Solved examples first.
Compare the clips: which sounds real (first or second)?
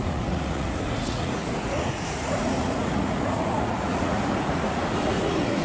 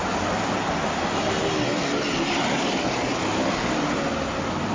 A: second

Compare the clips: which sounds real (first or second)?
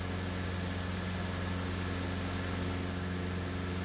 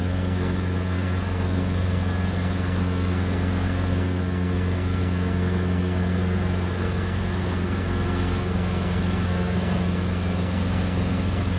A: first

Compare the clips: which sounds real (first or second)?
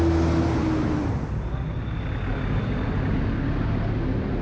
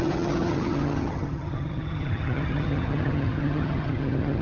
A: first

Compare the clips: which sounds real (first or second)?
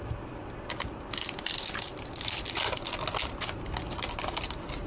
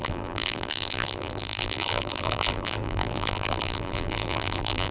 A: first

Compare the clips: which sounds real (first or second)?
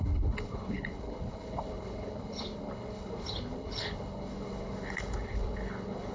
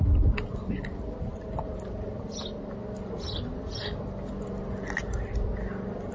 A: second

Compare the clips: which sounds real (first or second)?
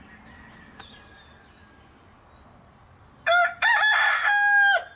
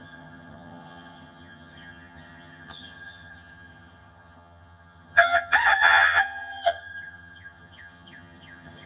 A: first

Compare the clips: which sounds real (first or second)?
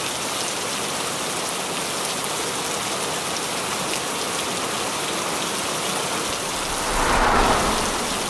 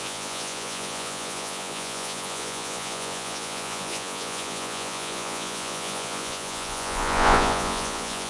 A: first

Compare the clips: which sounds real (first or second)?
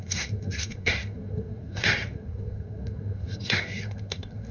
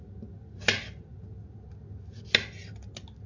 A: second